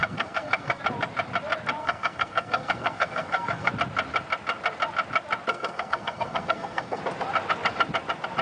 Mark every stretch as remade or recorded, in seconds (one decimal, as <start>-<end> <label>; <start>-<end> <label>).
0.0-0.8 remade; 0.8-1.8 recorded; 1.8-3.7 remade; 3.7-5.5 recorded; 5.5-7.0 remade; 7.0-8.4 recorded